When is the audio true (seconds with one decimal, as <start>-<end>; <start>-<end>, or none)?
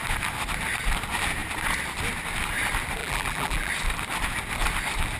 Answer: 0.0-3.0; 3.7-5.2